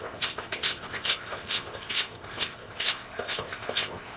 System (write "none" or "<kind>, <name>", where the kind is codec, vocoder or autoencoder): codec, ZipCodec